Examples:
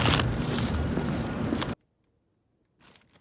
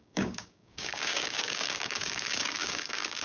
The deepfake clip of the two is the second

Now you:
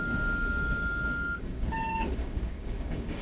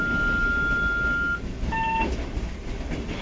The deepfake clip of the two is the first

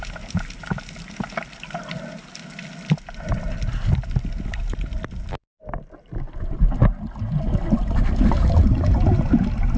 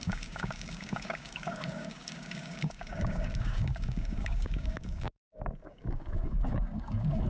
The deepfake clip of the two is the second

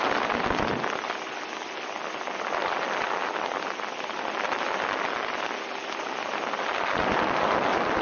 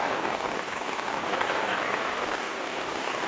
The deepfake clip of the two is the second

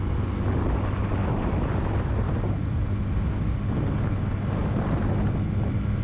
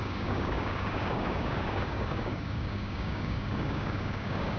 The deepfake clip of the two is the second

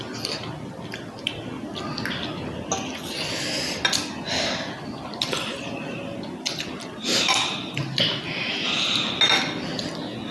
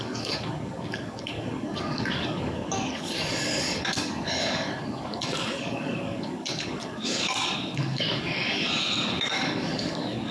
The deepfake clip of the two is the second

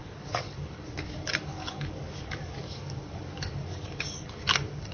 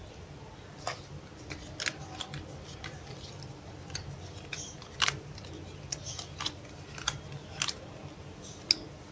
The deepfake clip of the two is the first